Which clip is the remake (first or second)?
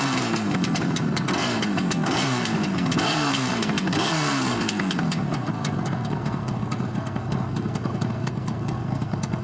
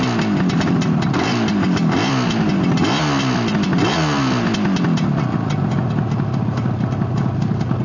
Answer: first